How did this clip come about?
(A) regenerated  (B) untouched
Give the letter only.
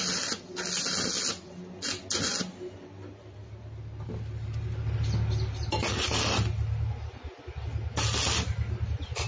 B